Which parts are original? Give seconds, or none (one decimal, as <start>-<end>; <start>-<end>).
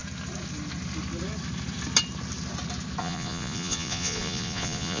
0.0-3.0